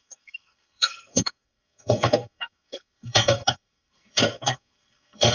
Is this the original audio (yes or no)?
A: no